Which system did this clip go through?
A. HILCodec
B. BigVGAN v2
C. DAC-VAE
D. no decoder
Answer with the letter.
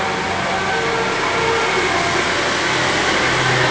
D